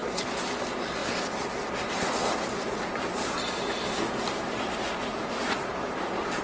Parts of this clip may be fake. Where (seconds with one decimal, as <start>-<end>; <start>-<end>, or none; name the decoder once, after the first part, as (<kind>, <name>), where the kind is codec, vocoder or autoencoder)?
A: 5.1-5.7 (vocoder, Vocos)